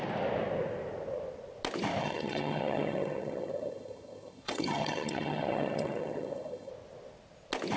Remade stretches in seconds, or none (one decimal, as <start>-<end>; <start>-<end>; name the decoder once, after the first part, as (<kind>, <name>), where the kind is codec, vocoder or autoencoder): 2.0-6.7 (vocoder, HiFi-GAN)